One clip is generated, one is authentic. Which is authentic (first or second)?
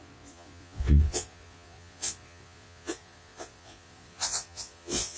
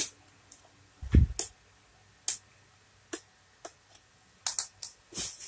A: second